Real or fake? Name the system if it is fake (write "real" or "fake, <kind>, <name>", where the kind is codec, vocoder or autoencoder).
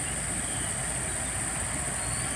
real